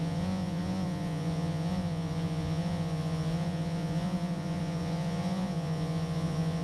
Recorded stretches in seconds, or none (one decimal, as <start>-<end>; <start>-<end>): none